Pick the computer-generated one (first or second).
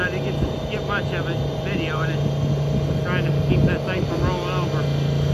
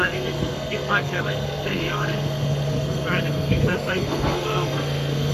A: second